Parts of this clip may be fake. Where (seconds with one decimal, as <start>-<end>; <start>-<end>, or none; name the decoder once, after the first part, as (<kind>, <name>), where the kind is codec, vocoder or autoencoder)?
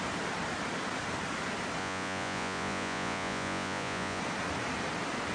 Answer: 1.8-4.2 (vocoder, Vocos)